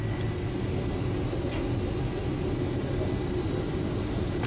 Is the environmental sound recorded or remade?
recorded